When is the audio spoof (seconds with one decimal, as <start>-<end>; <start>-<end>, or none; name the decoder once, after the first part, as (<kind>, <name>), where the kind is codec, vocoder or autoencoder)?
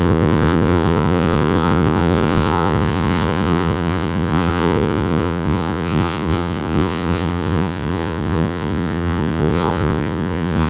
0.0-10.7 (vocoder, Vocos)